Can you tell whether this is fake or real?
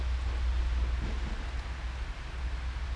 real